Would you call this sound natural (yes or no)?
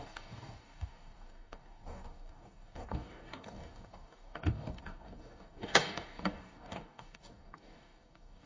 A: no